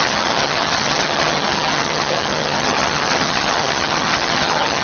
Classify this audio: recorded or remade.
remade